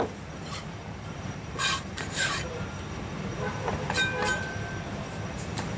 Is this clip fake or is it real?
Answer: fake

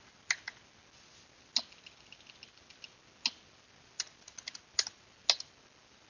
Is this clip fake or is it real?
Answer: real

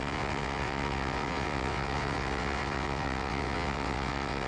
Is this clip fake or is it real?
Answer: fake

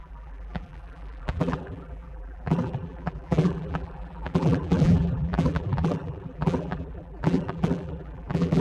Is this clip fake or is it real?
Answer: fake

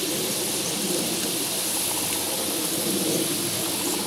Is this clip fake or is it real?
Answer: real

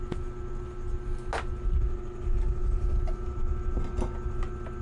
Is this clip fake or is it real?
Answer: real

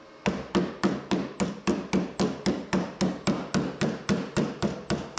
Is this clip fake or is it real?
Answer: real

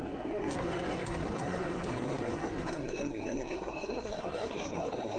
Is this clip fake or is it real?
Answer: fake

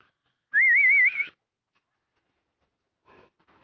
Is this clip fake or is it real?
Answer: fake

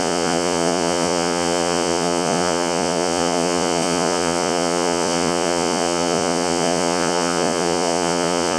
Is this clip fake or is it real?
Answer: fake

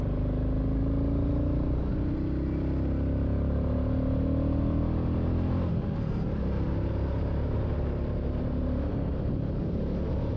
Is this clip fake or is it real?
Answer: real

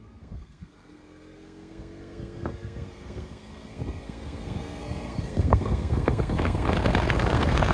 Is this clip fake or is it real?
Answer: fake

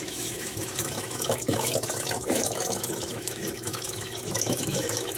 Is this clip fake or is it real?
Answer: fake